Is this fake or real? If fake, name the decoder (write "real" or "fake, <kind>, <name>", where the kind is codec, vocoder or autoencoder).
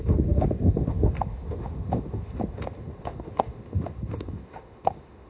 fake, autoencoder, DAC-VAE